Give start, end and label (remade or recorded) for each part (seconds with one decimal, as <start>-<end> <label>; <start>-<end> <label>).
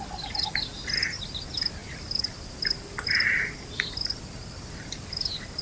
0.0-5.6 recorded